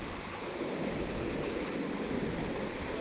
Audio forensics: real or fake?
real